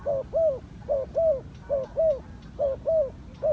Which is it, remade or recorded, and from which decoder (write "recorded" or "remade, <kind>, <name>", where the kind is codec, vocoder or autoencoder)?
recorded